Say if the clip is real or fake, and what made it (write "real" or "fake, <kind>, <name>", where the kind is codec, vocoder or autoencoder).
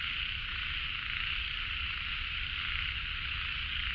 real